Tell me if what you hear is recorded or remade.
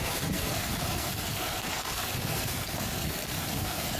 remade